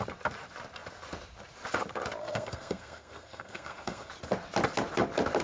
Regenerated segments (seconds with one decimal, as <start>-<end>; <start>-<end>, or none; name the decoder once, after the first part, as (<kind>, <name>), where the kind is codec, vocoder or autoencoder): 2.2-4.1 (codec, SNAC)